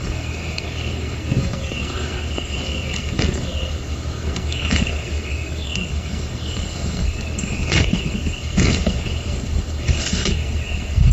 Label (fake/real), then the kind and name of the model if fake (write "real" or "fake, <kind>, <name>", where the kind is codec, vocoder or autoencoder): fake, codec, SNAC